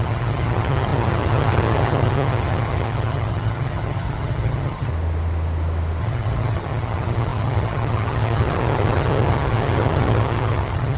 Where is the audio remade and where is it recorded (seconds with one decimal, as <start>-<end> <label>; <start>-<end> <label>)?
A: 0.0-4.9 remade; 4.9-6.0 recorded; 6.0-11.0 remade